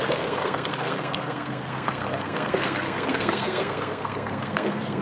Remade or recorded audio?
remade